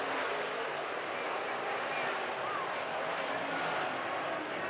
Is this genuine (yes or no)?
yes